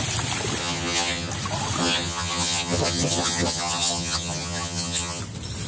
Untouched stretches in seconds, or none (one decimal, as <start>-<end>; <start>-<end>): 0.0-0.6; 1.3-1.8; 5.2-5.7